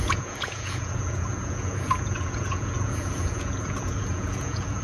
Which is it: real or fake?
fake